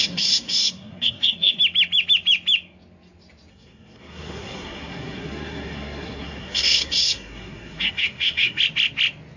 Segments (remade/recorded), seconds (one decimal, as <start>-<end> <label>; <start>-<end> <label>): 0.0-1.6 remade; 1.6-3.5 recorded; 3.5-8.6 remade; 8.6-9.4 recorded